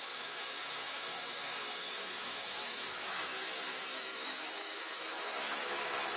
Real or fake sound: fake